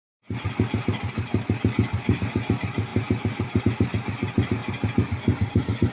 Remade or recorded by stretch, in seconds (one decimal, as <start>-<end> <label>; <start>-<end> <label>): 0.0-5.9 recorded